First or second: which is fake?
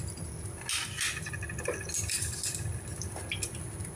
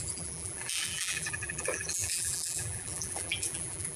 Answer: second